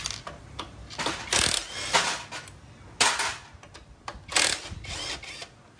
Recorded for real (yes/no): yes